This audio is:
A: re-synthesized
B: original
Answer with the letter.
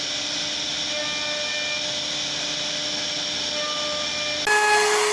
B